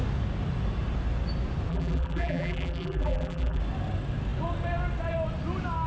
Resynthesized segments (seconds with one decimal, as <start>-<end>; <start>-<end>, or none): 1.7-3.6